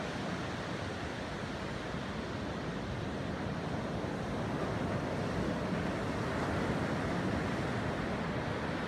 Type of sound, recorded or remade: recorded